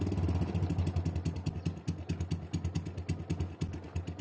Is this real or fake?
real